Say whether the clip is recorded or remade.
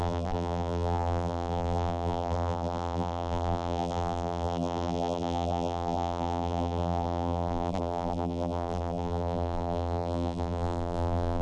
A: remade